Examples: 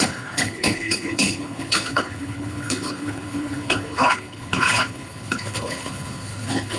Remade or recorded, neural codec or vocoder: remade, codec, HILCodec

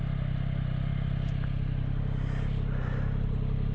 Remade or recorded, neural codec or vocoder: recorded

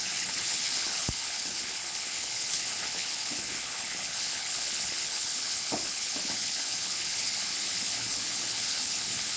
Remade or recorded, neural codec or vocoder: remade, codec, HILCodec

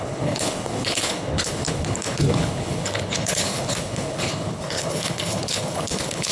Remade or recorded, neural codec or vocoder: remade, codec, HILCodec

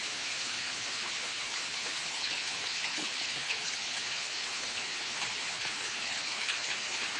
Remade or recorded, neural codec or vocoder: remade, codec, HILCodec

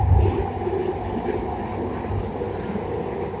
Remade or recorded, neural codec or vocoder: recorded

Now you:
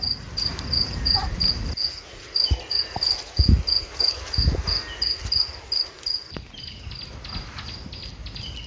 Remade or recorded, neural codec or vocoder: recorded